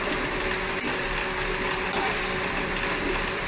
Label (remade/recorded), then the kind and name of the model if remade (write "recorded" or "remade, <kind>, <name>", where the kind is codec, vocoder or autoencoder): remade, vocoder, BigVGAN v2